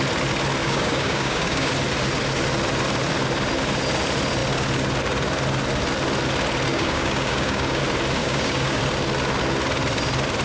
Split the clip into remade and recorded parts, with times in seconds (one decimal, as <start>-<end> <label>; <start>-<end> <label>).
0.0-0.6 recorded; 0.6-1.7 remade; 1.7-6.7 recorded; 6.7-7.8 remade; 7.8-8.2 recorded; 8.2-8.8 remade; 8.8-10.4 recorded